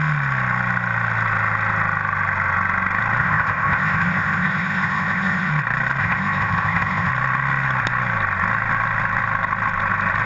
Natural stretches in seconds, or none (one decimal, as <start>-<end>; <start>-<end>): 0.0-3.2; 5.5-6.0; 7.1-10.3